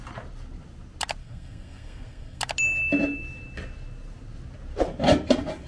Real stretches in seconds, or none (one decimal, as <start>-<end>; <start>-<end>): 0.0-1.2; 2.4-5.7